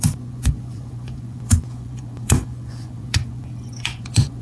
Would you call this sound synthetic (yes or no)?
yes